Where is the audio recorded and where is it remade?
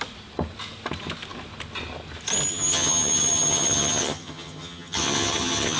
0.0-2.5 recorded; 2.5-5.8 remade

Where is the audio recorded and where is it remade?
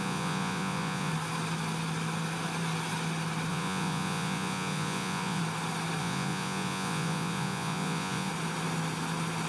0.0-1.1 remade; 1.1-3.5 recorded; 3.5-5.4 remade; 5.4-6.0 recorded; 6.0-8.3 remade; 8.3-9.5 recorded